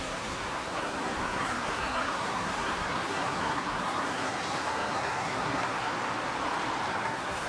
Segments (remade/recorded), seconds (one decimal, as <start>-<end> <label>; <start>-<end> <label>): 0.0-5.9 remade; 5.9-6.9 recorded; 6.9-7.5 remade